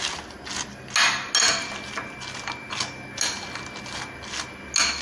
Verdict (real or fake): real